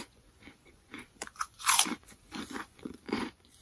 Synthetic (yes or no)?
yes